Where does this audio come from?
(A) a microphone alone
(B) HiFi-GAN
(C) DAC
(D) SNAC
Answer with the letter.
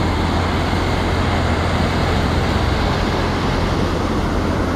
A